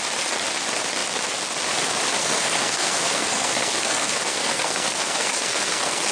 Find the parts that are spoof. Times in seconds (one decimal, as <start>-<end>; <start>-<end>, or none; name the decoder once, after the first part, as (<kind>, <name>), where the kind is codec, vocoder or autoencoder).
2.2-6.1 (codec, SNAC)